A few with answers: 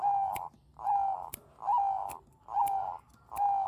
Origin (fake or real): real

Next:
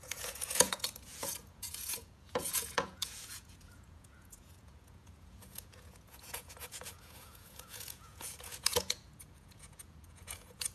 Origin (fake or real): fake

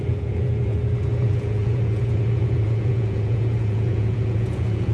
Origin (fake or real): fake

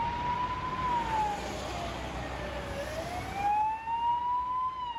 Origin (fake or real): real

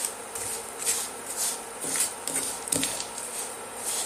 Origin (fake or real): real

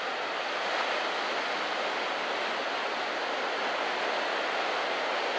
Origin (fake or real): real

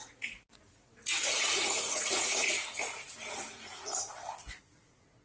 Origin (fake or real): fake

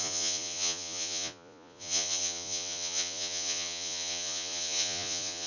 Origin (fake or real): fake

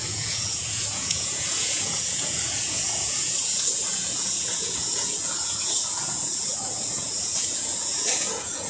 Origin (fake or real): fake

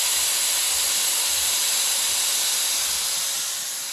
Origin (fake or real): real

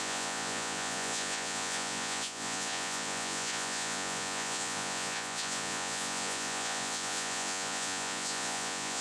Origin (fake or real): fake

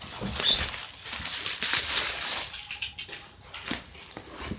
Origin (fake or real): real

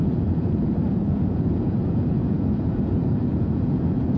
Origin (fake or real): fake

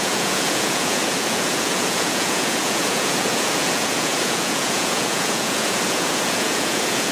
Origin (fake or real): fake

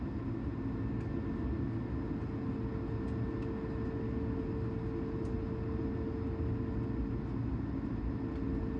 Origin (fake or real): real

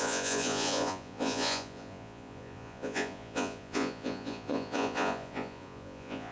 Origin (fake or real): fake